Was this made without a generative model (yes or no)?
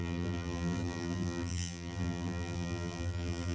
no